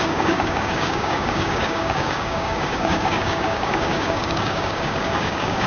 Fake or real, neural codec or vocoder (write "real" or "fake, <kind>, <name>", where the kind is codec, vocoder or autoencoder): fake, codec, DAC